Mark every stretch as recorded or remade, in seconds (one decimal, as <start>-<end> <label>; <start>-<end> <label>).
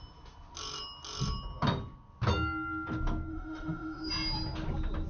0.0-3.3 recorded; 3.3-4.1 remade; 4.1-5.1 recorded